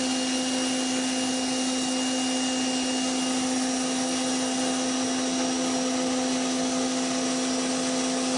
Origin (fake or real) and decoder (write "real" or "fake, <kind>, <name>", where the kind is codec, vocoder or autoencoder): real